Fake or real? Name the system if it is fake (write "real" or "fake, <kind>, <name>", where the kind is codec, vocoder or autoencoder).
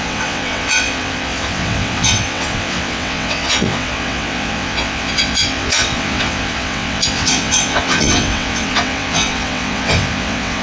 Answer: fake, vocoder, WaveNeXt